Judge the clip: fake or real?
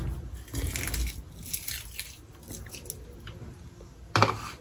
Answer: real